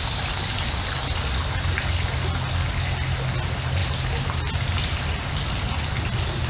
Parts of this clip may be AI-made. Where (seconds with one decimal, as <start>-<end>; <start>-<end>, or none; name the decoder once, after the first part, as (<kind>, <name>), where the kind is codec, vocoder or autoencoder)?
3.8-4.5 (vocoder, BigVGAN v2)